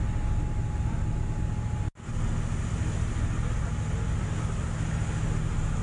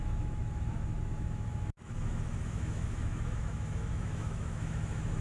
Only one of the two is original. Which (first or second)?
first